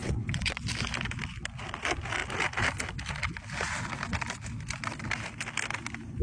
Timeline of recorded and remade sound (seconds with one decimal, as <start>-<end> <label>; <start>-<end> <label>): 0.0-0.6 remade; 0.6-6.2 recorded